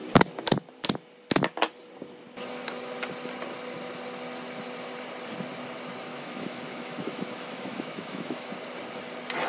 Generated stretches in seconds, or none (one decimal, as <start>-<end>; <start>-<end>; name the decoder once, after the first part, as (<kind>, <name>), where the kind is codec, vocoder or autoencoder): 6.1-8.5 (autoencoder, DAC-VAE)